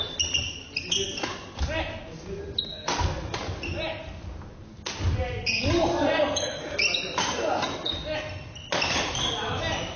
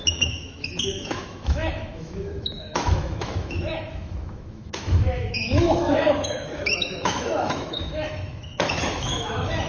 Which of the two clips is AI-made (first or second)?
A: second